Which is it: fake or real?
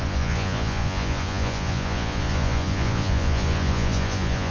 fake